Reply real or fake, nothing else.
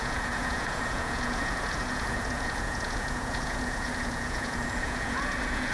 fake